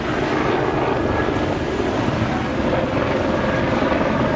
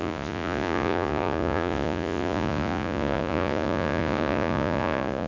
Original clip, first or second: first